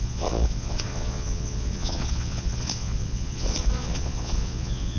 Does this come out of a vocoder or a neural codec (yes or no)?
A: yes